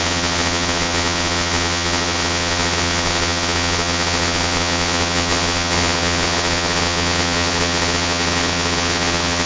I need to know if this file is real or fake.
fake